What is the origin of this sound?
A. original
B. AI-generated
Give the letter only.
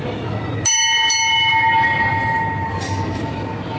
A